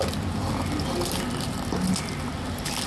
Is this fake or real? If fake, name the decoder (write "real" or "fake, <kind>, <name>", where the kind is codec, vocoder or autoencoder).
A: real